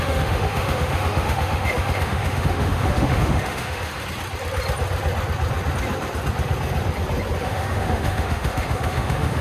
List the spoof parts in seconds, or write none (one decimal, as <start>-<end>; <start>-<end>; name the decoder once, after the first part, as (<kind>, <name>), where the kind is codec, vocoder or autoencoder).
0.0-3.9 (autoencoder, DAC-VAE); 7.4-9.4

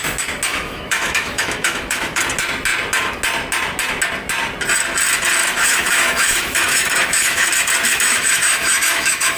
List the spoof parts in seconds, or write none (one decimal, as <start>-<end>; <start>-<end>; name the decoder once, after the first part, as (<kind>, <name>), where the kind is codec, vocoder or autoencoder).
0.5-2.2 (autoencoder, DAC-VAE); 5.4-7.5; 7.9-9.4

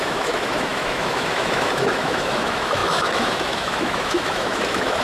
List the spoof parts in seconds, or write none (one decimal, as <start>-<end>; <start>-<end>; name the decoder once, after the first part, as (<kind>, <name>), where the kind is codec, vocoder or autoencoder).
0.0-5.0 (autoencoder, DAC-VAE)

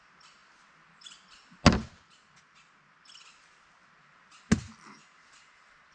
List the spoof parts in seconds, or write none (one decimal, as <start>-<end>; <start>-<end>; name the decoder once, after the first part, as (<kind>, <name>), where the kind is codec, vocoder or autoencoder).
none

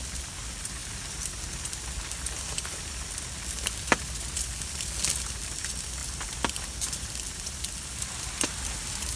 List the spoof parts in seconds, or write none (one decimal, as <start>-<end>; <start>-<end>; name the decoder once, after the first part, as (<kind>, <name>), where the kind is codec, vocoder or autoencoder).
none

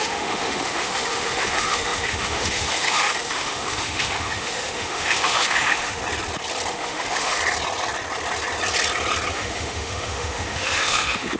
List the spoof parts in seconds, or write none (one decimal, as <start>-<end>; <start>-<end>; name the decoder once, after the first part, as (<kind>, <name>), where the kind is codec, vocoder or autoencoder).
0.0-6.0 (autoencoder, DAC-VAE); 6.7-7.4; 9.3-11.4